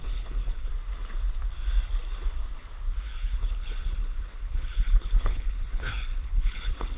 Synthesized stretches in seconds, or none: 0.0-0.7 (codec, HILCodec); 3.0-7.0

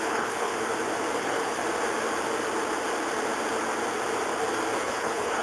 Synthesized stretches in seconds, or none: 0.0-0.5 (codec, HILCodec); 1.2-1.6; 4.8-5.4

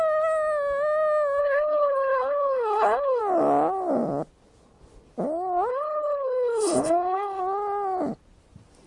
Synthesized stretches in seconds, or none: 1.4-3.2 (codec, HILCodec); 5.7-7.4

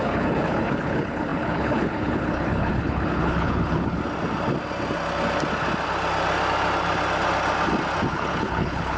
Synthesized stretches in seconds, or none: 0.0-4.0 (codec, HILCodec); 8.1-9.0

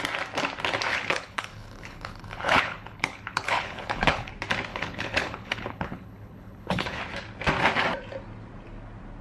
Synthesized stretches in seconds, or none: 0.9-4.3 (codec, HILCodec); 4.7-7.0

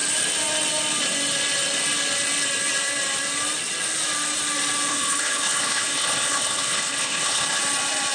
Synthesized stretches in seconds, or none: 4.9-7.6 (codec, HILCodec)

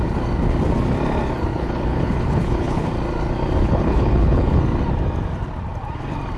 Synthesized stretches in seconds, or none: 1.5-2.9 (codec, HILCodec); 3.6-4.6